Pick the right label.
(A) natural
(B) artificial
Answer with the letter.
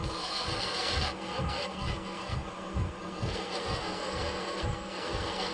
B